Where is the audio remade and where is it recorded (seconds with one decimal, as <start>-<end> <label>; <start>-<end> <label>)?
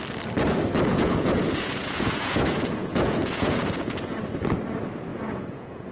0.0-0.9 recorded; 0.9-4.2 remade; 4.2-5.1 recorded; 5.1-5.9 remade